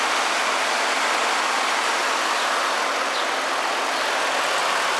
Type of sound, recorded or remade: recorded